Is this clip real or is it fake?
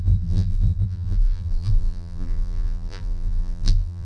fake